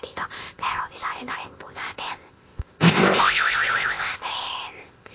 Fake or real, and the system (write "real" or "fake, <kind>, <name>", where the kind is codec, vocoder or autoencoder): fake, codec, ZipCodec